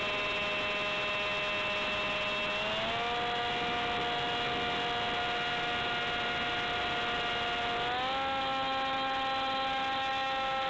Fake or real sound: real